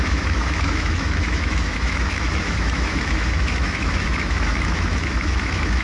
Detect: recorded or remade remade